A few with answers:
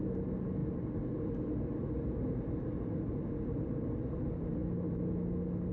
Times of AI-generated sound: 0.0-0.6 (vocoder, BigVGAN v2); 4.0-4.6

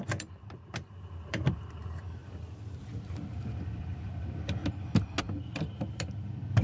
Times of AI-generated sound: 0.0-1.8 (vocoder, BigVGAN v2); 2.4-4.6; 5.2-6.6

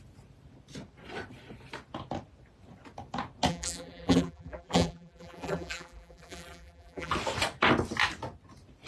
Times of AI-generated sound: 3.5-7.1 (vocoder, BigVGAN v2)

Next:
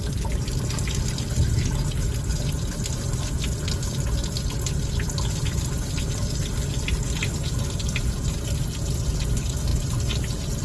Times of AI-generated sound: none